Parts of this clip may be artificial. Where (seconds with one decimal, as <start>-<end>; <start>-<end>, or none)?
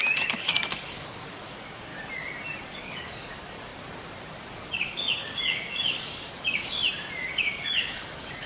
0.0-1.9; 2.6-3.7; 4.7-6.8; 7.3-8.5